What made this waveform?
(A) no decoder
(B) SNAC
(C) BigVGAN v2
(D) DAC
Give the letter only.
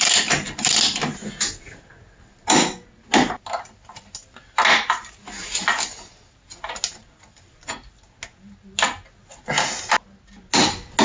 A